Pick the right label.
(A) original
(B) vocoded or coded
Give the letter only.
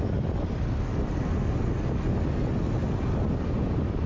A